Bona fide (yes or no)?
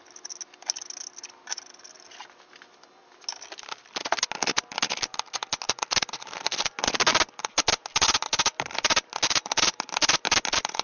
yes